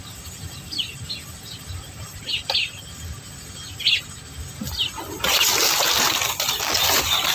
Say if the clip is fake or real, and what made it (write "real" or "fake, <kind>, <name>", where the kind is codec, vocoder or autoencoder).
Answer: real